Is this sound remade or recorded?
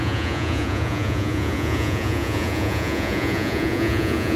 remade